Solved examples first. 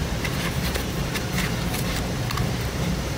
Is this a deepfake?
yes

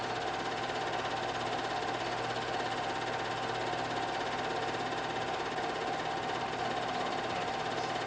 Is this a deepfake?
no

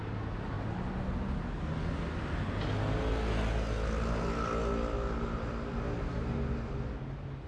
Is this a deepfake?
no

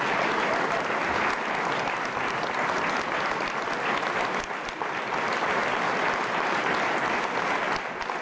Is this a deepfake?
no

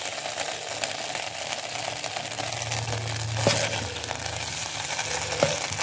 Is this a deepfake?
no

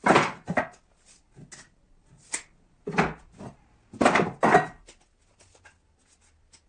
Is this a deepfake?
no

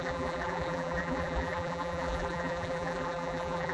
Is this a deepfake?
yes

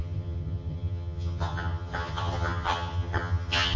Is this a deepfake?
yes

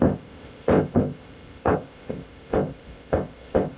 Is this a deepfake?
yes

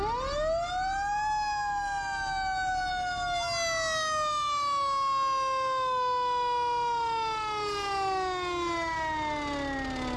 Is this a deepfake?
no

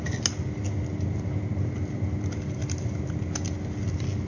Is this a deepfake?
no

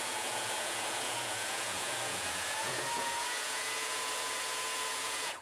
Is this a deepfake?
yes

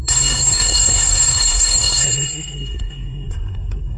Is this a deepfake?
yes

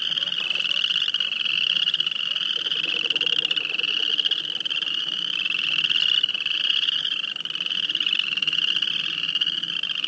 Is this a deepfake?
no